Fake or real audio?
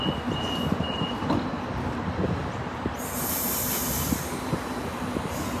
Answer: real